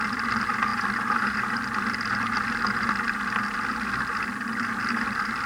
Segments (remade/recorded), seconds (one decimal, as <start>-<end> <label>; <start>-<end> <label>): 0.0-5.5 recorded